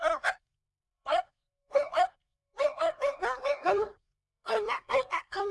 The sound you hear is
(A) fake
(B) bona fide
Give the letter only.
A